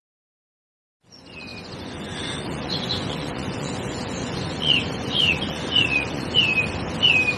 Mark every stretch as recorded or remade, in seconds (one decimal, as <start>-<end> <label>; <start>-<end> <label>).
0.0-6.5 remade; 6.5-7.4 recorded